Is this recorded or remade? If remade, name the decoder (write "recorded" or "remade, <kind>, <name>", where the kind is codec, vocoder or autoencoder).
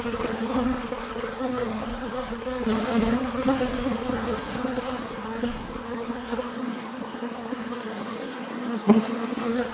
remade, codec, SNAC